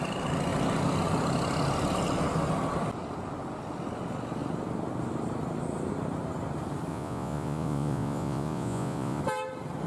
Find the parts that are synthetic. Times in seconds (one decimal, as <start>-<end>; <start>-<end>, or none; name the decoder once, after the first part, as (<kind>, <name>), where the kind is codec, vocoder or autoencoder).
6.9-9.2 (vocoder, Vocos)